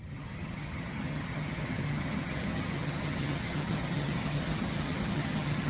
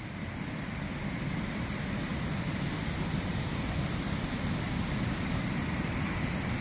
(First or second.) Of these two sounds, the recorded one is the second